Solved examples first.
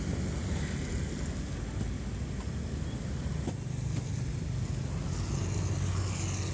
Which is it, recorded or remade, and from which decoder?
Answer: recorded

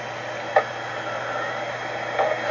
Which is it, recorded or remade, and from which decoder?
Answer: recorded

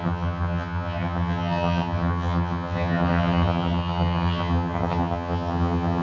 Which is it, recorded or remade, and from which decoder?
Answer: remade, vocoder, HiFi-GAN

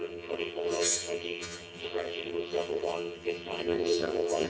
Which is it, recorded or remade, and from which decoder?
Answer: remade, vocoder, HiFi-GAN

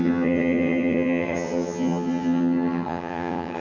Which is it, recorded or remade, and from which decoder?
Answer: remade, vocoder, HiFi-GAN